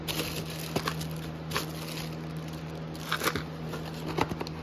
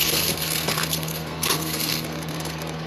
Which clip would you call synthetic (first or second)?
second